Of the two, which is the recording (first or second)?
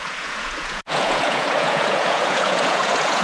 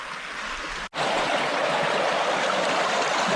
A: second